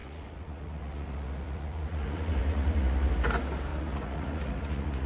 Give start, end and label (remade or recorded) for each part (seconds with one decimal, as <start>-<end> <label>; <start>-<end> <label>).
0.0-3.1 remade; 3.1-3.7 recorded; 3.7-5.1 remade